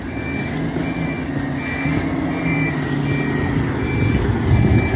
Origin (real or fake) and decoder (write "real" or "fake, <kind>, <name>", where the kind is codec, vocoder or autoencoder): real